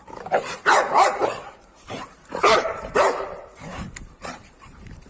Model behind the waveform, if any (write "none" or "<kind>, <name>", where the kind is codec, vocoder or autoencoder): vocoder, BigVGAN v2